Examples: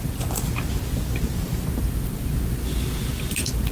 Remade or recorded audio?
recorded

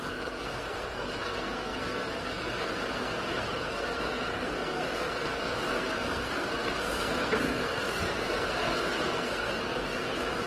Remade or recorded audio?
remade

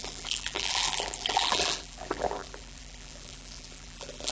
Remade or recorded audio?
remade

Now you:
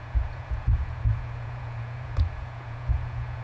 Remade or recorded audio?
remade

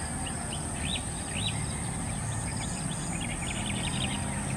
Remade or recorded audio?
recorded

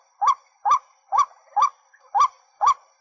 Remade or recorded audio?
recorded